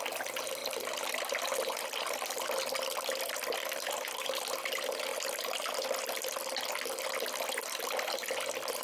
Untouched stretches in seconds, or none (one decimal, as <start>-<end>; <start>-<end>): 0.0-8.8